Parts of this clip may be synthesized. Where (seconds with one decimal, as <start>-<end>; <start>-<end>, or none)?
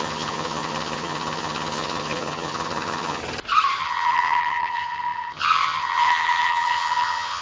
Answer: 0.0-3.2; 3.8-7.4